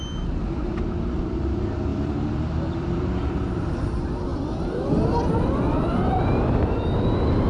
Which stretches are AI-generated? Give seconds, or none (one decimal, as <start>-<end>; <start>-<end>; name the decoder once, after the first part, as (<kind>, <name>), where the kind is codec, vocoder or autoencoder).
1.9-3.7 (vocoder, BigVGAN v2); 4.3-7.5